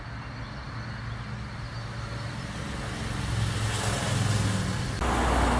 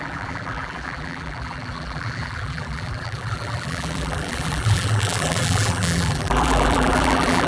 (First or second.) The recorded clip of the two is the first